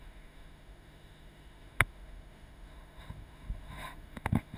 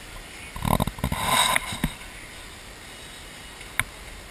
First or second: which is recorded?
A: second